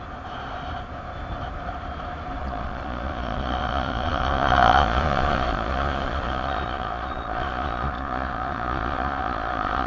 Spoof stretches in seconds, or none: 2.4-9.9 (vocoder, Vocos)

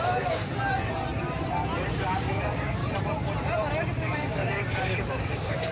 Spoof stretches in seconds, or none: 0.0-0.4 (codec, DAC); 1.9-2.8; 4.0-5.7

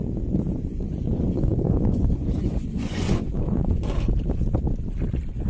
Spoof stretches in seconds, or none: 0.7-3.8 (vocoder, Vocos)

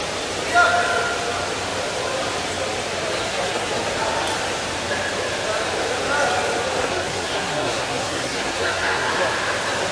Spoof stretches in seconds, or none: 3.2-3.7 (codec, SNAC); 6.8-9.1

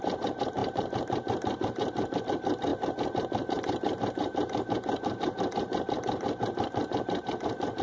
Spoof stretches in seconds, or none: 0.0-7.8 (vocoder, BigVGAN v2)

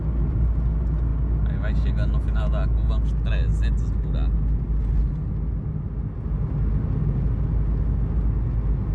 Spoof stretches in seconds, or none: none